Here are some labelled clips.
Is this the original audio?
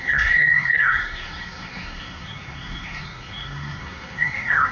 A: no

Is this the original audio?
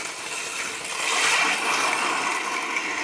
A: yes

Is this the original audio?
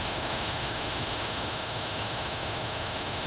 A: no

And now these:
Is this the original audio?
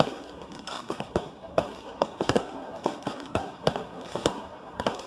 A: no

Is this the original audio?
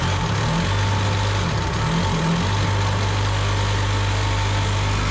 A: yes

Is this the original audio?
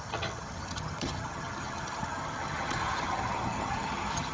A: no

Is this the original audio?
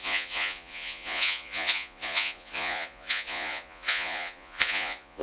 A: no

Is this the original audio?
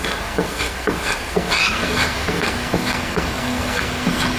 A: no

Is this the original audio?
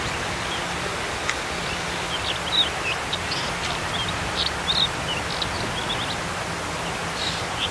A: yes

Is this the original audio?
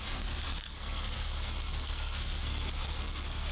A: no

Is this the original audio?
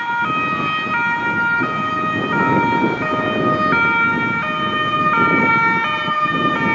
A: yes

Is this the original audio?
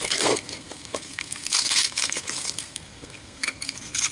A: no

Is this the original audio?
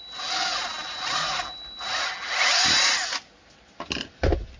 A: yes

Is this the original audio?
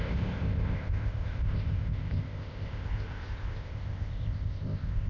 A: no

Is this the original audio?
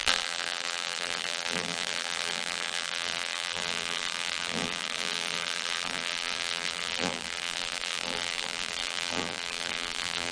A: no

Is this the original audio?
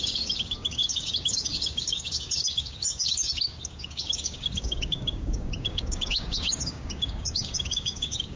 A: no